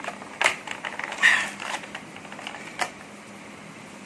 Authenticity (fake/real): real